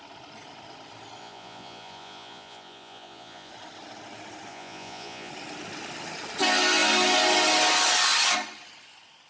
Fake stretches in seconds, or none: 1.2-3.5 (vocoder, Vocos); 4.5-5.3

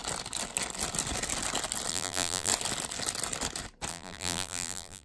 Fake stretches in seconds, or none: 1.9-2.5 (vocoder, BigVGAN v2); 3.9-5.0

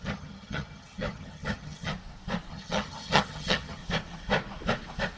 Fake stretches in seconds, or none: 0.0-1.9 (vocoder, HiFi-GAN); 2.5-3.8